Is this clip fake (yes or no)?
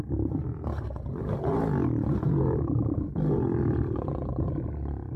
no